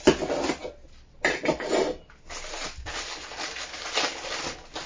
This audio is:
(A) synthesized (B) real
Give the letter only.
B